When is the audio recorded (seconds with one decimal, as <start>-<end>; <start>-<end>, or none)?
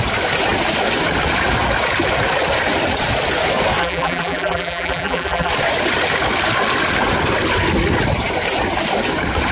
0.0-3.8; 5.5-9.5